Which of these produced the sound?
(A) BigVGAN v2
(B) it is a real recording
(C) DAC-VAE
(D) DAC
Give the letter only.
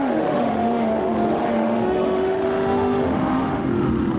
C